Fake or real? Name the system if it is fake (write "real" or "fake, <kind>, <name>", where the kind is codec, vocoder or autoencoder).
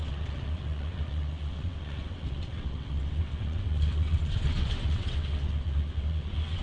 fake, vocoder, WaveNeXt